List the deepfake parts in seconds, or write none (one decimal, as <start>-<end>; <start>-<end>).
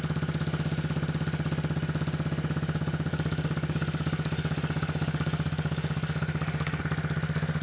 3.1-6.8